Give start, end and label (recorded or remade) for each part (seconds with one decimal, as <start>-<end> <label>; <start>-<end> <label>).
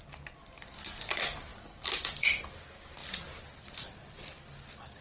0.0-1.5 recorded; 1.5-2.6 remade; 2.6-3.0 recorded; 3.0-5.0 remade